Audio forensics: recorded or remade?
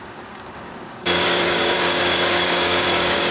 remade